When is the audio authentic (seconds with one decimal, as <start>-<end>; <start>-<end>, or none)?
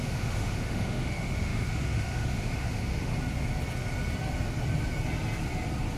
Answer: 3.1-6.0